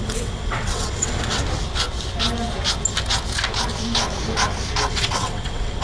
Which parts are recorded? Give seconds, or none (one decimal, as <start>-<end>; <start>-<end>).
1.4-4.9